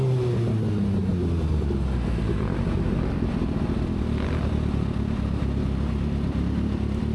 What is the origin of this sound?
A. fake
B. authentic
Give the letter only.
B